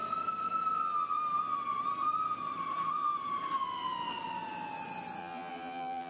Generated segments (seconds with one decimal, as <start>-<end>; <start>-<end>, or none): 5.2-6.1